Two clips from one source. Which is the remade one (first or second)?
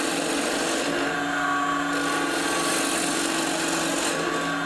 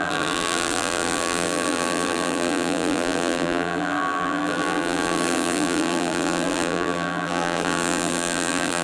second